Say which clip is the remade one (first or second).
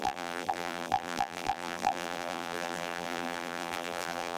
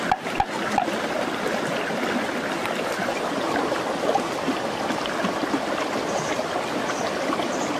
first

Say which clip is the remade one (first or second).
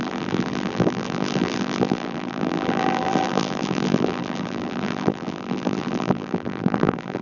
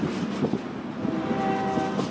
first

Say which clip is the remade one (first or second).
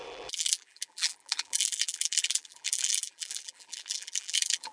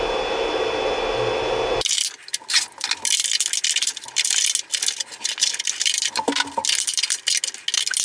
first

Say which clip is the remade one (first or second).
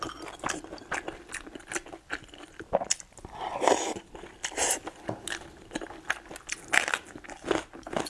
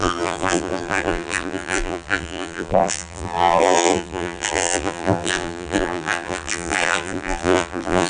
second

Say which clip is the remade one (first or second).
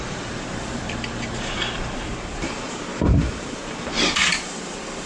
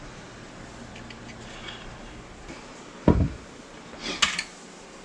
first